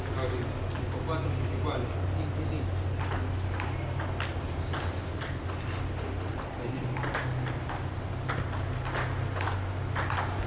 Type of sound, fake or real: real